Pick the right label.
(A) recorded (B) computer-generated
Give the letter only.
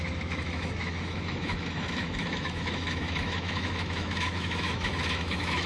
B